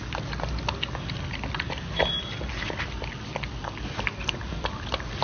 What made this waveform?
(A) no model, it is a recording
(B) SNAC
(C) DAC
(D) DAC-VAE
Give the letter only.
A